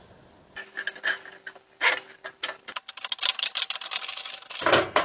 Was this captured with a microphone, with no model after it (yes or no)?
yes